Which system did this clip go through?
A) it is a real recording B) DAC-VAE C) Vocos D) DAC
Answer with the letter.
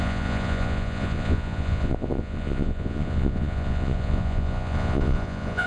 C